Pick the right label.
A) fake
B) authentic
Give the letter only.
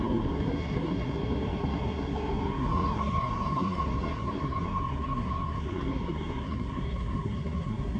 A